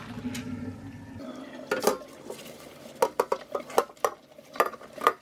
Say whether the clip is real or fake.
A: real